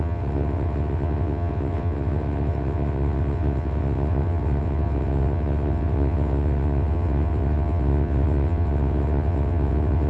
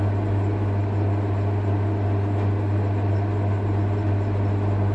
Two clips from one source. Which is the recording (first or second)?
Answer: second